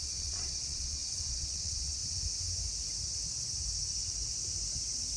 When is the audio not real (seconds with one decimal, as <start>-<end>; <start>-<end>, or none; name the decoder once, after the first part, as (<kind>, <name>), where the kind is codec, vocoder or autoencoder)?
0.0-2.0 (vocoder, Vocos)